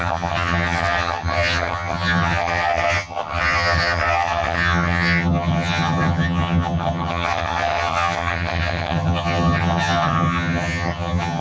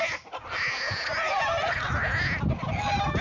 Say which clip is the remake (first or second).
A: first